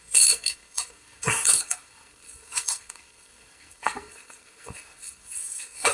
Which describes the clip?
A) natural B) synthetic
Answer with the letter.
B